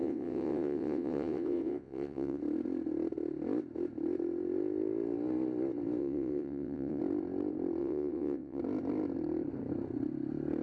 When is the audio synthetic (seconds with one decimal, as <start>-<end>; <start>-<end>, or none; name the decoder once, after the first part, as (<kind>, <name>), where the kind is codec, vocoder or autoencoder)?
0.0-2.4 (vocoder, WaveNeXt); 6.0-7.0; 7.8-8.6